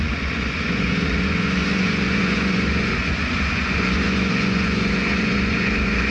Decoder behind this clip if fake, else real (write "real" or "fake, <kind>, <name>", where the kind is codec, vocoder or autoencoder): fake, vocoder, Vocos